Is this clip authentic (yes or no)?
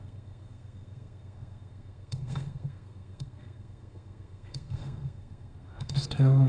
no